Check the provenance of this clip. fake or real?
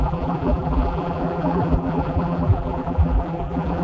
fake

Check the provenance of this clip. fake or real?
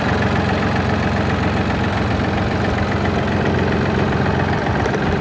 fake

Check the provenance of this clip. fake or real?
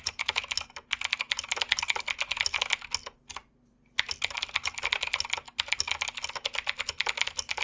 real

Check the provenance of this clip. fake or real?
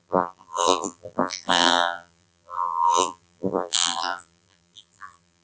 fake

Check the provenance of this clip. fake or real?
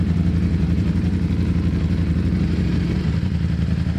fake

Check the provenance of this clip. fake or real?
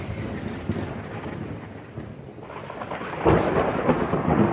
real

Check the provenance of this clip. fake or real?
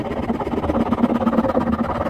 real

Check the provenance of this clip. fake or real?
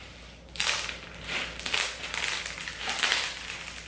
real